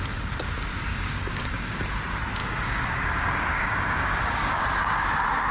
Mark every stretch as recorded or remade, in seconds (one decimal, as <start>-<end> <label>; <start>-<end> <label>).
0.0-0.9 recorded; 0.9-1.8 remade; 1.8-2.4 recorded; 2.4-4.6 remade; 4.6-5.5 recorded